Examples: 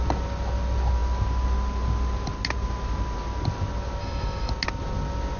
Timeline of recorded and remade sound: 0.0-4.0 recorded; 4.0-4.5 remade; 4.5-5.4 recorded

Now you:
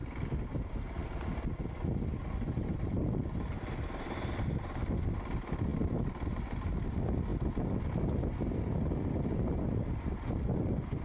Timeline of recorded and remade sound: 0.0-11.0 recorded